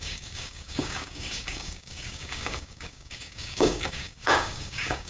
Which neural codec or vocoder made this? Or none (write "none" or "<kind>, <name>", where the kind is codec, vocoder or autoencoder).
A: codec, DAC